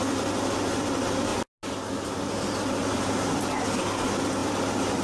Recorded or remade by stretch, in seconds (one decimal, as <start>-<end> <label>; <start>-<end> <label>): 0.0-4.4 recorded; 4.4-5.0 remade